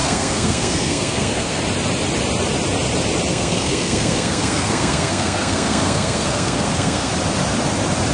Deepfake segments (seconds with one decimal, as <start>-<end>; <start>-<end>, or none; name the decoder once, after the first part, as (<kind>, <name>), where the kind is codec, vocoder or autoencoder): 0.0-1.6 (codec, SNAC); 3.3-7.1